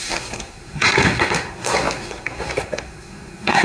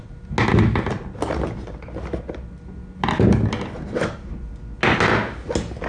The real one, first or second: second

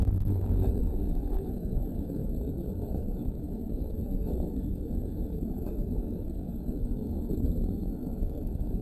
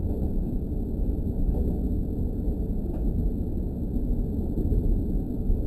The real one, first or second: second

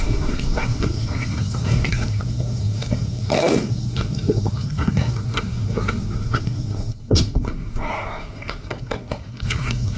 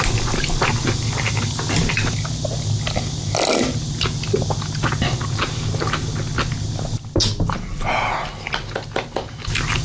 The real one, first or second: second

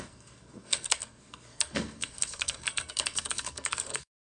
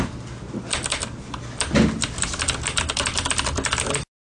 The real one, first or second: second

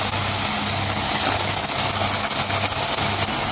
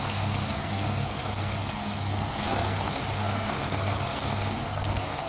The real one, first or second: first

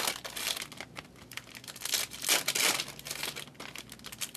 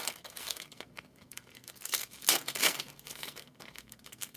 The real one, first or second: first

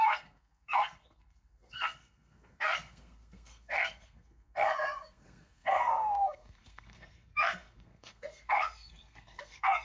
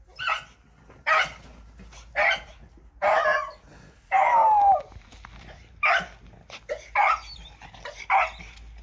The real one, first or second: second